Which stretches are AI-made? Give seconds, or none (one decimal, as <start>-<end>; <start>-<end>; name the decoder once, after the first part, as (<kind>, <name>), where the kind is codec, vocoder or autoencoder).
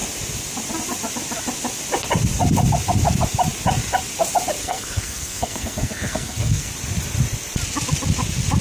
4.6-6.7 (codec, SNAC)